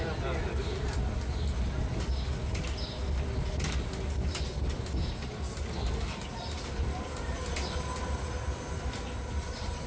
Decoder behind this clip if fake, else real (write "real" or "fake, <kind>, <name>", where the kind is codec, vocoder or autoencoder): real